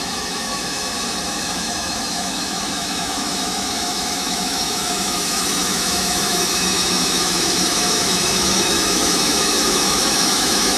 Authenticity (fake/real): fake